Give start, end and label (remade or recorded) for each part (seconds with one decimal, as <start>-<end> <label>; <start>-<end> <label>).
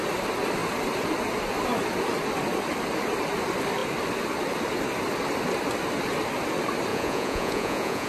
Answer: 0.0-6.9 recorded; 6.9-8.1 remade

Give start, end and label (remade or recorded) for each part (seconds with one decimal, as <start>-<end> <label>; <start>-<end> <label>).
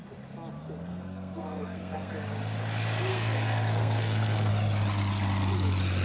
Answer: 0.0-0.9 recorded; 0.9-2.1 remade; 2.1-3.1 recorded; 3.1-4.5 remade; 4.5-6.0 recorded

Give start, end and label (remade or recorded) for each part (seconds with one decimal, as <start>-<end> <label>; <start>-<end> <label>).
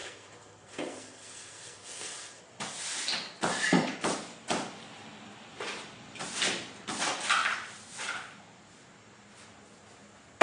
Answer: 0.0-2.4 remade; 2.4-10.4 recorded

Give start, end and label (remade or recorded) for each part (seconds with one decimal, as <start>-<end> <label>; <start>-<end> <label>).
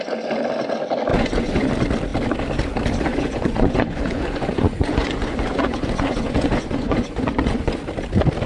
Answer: 0.0-1.1 recorded; 1.1-1.7 remade; 1.7-3.1 recorded; 3.1-7.7 remade; 7.7-8.5 recorded